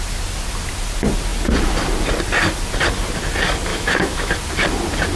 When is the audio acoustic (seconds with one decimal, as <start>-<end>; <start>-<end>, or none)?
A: 0.0-3.7; 4.3-5.2